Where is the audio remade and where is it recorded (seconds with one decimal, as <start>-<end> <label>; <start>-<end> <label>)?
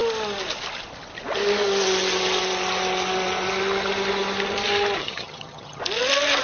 0.0-5.0 recorded; 5.0-5.8 remade; 5.8-6.4 recorded